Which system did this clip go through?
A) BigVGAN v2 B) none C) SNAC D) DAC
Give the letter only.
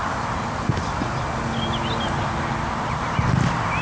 B